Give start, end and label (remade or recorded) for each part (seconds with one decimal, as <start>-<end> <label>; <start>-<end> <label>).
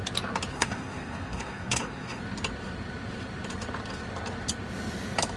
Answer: 0.0-0.5 recorded; 0.5-2.2 remade; 2.2-5.4 recorded